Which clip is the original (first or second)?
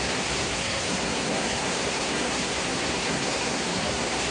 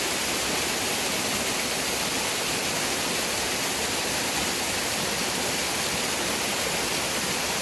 second